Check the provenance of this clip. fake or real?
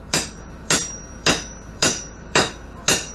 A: fake